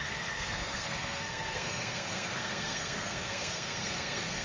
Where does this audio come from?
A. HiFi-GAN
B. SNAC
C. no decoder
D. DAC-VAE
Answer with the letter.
B